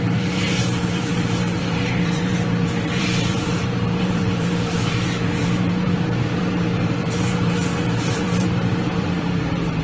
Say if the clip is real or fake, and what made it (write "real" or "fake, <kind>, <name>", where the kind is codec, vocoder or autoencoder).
fake, vocoder, BigVGAN v2